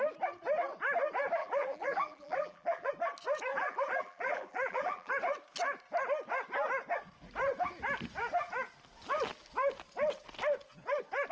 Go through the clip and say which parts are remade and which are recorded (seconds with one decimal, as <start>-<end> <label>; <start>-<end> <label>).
0.0-1.4 recorded; 1.4-2.9 remade; 2.9-3.5 recorded; 3.5-5.1 remade; 5.1-11.3 recorded